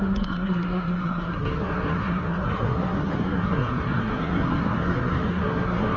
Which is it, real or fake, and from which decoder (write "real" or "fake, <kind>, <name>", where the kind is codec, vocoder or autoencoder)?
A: fake, codec, SNAC